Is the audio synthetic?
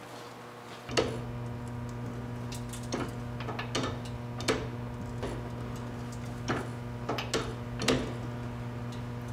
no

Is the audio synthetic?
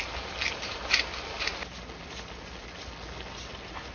no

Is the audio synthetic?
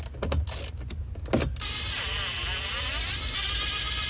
no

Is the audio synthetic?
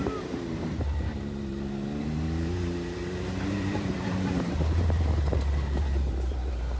yes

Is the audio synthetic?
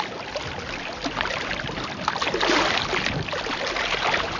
yes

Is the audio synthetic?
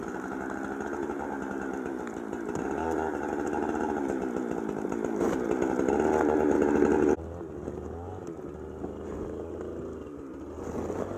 no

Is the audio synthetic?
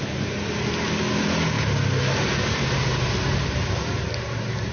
no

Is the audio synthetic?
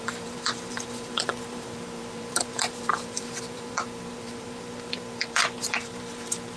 yes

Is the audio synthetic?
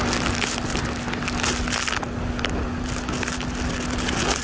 no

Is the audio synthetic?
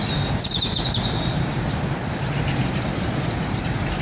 yes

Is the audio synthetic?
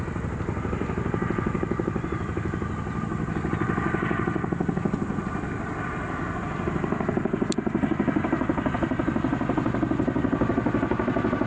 yes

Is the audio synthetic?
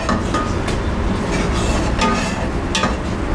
no